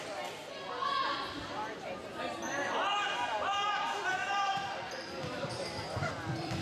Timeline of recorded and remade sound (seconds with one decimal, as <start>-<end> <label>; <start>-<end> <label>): 0.0-0.4 remade; 0.4-4.4 recorded; 4.4-6.6 remade